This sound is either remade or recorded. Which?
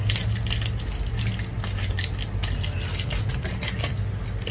recorded